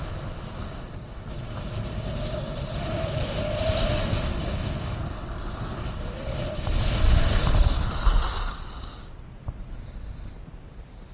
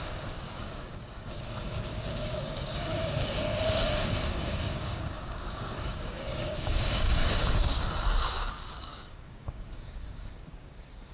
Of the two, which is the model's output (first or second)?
second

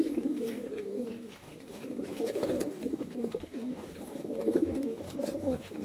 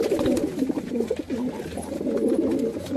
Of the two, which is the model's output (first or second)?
first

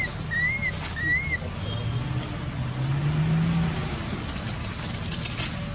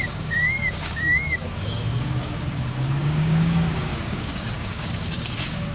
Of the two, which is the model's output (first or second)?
second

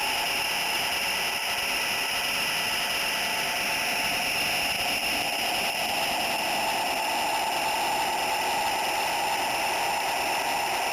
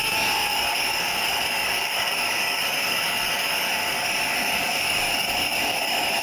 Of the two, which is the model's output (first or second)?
second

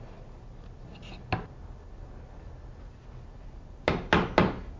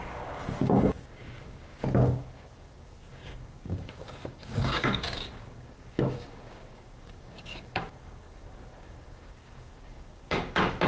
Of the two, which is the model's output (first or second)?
second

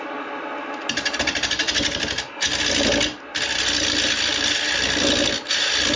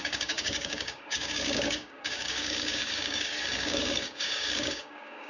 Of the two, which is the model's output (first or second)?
second